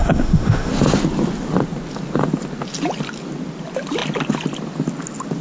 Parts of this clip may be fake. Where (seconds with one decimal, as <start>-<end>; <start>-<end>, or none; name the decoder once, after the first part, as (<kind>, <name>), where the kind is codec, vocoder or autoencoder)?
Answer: 0.0-0.7 (autoencoder, DAC-VAE)